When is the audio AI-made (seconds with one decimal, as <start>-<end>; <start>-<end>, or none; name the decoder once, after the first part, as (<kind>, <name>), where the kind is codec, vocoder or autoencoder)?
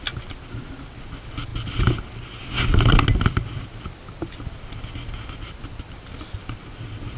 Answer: none